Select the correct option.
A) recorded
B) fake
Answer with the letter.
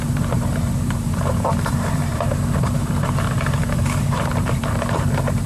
B